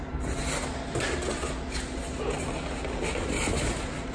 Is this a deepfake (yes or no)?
no